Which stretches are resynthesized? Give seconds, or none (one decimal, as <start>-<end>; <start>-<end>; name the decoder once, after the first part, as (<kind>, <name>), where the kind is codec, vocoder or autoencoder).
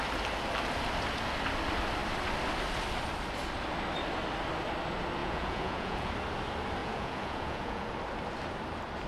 5.2-6.1 (vocoder, Vocos); 6.8-7.9